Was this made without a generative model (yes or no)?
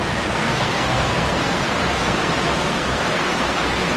no